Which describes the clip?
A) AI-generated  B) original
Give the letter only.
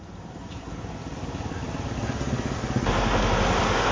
B